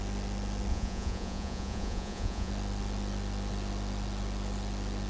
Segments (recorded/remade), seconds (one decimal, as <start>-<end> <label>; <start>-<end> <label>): 0.0-0.7 recorded; 0.7-2.5 remade; 2.5-5.1 recorded